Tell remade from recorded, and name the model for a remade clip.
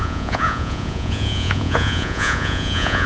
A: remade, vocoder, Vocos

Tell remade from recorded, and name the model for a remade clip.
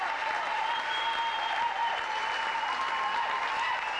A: recorded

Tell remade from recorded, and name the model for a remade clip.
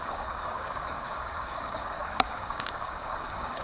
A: remade, codec, DAC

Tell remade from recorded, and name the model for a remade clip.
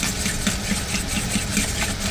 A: recorded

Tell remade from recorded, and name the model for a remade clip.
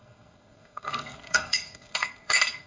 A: remade, codec, SNAC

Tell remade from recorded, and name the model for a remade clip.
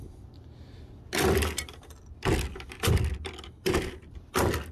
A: recorded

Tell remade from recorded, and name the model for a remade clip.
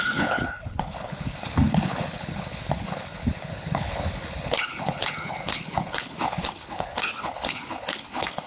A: remade, codec, HILCodec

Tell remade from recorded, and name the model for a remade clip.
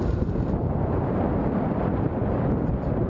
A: remade, vocoder, BigVGAN v2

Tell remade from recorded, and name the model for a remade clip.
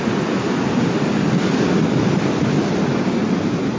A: recorded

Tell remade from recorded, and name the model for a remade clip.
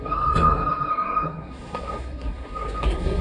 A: remade, codec, SNAC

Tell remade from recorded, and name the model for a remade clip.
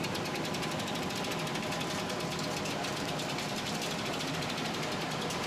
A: recorded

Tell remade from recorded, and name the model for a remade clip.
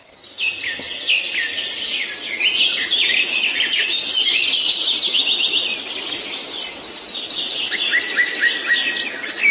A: recorded